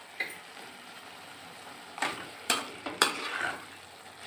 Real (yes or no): no